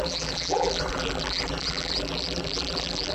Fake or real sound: fake